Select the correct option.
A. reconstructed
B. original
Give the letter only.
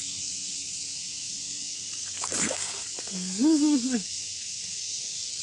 A